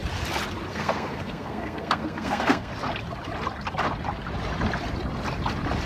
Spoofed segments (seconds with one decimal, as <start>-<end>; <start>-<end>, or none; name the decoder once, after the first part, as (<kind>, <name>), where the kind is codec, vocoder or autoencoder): 0.7-2.7 (codec, SNAC)